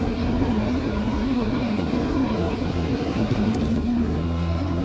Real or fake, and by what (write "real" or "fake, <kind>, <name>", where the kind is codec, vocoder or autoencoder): fake, codec, SNAC